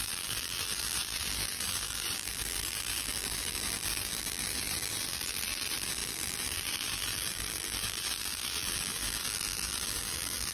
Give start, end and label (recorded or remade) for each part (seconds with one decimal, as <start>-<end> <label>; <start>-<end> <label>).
0.0-10.5 remade